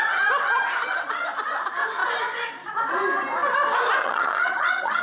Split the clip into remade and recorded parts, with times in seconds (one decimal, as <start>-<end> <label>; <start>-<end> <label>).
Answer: 0.0-4.0 recorded; 4.0-5.0 remade

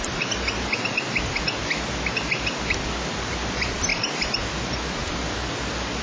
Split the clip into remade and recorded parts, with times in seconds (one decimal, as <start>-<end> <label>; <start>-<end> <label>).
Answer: 0.0-6.0 recorded

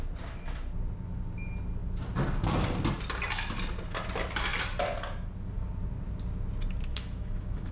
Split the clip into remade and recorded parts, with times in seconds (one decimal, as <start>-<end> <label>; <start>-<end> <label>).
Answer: 0.0-6.9 recorded; 6.9-7.7 remade

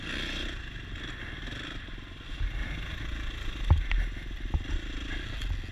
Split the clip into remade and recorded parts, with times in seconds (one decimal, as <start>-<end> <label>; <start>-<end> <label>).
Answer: 0.0-5.7 recorded